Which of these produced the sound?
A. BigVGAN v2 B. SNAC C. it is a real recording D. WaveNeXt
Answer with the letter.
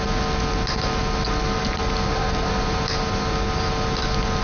C